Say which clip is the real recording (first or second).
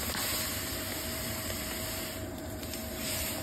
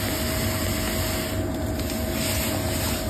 second